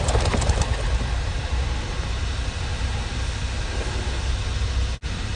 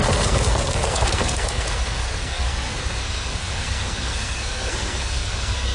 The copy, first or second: second